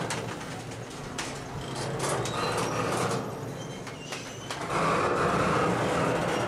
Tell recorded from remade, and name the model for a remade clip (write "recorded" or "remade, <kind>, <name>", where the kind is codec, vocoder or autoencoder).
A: recorded